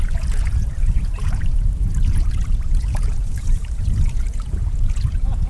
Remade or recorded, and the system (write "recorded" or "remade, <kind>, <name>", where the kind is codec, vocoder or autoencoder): remade, vocoder, Vocos